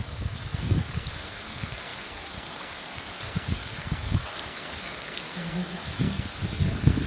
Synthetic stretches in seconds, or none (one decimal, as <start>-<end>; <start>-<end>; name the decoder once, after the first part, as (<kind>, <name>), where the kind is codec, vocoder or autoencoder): 0.0-7.1 (codec, SNAC)